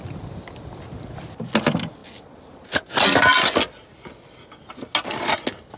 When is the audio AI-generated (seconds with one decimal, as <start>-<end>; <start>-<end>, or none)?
none